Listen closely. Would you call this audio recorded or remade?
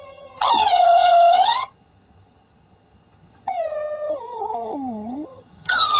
remade